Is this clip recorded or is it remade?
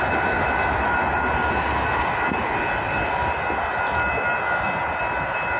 recorded